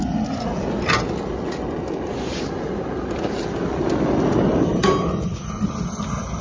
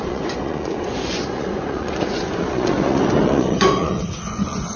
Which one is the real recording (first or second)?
first